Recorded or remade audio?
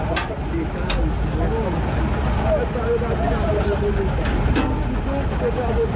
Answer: recorded